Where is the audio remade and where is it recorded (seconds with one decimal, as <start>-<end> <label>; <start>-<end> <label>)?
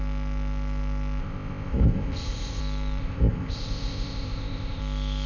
0.0-1.2 recorded; 1.2-2.6 remade; 2.6-3.0 recorded; 3.0-4.8 remade; 4.8-5.3 recorded